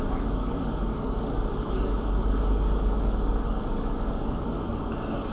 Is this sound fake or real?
fake